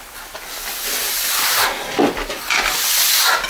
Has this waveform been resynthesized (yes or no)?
no